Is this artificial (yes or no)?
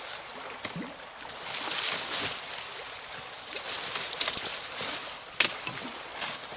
no